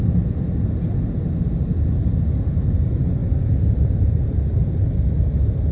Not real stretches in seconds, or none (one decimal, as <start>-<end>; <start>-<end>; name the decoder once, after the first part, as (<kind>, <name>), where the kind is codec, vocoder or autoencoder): none